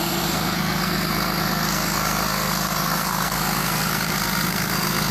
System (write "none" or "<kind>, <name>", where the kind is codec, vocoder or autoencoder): codec, SNAC